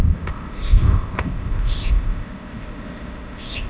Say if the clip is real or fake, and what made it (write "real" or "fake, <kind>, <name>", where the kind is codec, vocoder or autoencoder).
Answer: fake, codec, ZipCodec